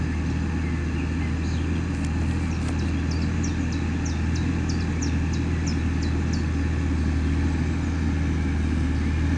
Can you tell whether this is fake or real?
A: real